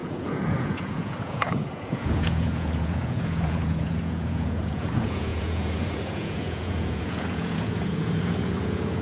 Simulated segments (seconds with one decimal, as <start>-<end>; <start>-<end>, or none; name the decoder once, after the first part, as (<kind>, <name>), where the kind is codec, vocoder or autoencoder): 0.0-9.0 (vocoder, Vocos)